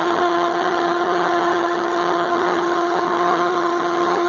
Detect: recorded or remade remade